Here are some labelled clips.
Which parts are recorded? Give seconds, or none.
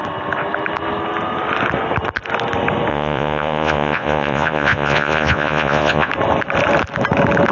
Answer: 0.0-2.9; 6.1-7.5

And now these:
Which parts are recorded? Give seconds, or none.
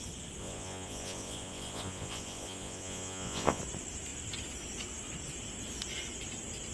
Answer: 0.0-0.4; 3.6-6.7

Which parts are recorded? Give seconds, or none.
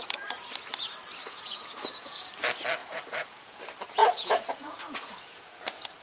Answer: 0.0-1.2; 2.3-2.8; 3.6-4.0; 5.6-6.0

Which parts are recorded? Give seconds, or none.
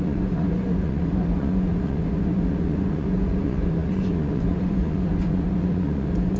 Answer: none